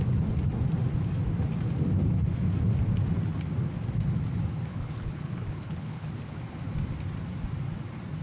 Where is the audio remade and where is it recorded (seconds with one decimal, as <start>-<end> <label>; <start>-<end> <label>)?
0.0-4.7 recorded; 4.7-6.1 remade; 6.1-8.2 recorded